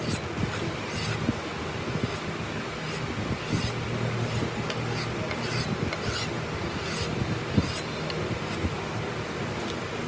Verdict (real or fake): real